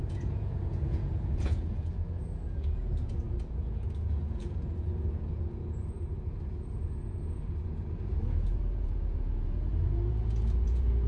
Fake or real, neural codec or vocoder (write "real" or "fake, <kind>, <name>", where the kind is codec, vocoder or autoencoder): fake, vocoder, Vocos